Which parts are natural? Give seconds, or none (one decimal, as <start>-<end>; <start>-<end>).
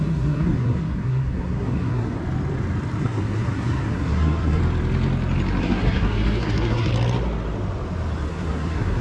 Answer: 2.2-3.0; 4.6-5.6; 6.9-8.3